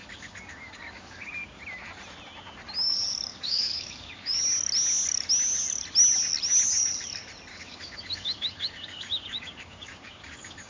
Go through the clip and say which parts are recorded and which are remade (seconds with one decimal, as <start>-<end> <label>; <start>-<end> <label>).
0.0-1.6 remade; 1.6-3.3 recorded; 3.3-4.4 remade; 4.4-7.5 recorded; 7.5-10.7 remade